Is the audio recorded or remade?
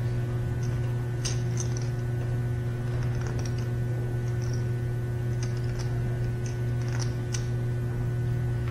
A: recorded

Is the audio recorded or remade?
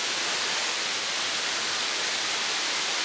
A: remade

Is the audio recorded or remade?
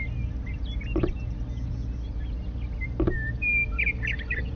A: recorded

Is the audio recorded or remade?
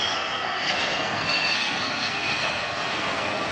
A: remade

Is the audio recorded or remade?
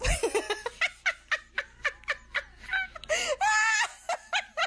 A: recorded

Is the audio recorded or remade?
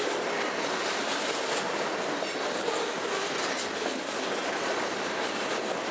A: recorded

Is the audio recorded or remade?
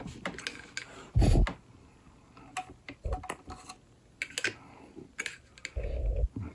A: recorded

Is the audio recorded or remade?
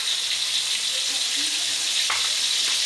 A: recorded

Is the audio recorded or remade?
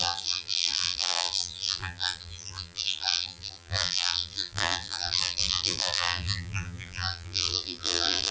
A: remade